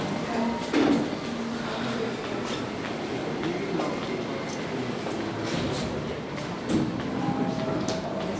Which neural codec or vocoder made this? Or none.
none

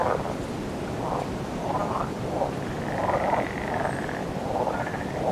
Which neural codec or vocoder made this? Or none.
none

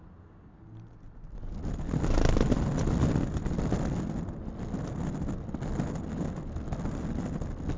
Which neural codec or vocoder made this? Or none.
none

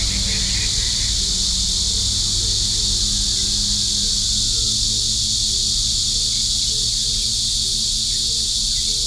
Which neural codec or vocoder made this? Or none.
none